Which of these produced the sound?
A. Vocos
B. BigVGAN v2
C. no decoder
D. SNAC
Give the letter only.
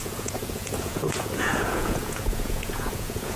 A